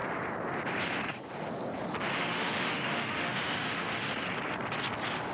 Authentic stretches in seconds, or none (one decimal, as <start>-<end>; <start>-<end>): 0.0-2.1; 4.1-5.3